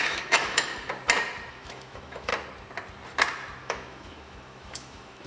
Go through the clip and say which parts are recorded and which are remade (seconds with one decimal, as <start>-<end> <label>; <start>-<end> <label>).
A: 0.0-0.7 remade; 0.7-1.5 recorded; 1.5-2.3 remade; 2.3-3.6 recorded; 3.6-5.3 remade

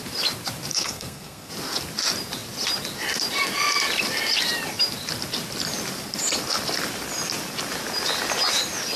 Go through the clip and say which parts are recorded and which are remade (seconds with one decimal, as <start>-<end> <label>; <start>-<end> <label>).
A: 0.0-0.7 recorded; 0.7-1.5 remade; 1.5-9.0 recorded